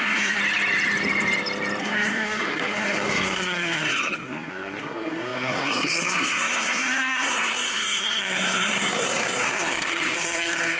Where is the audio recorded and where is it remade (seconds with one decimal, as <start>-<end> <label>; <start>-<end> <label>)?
0.0-0.4 remade; 0.4-1.8 recorded; 1.8-10.8 remade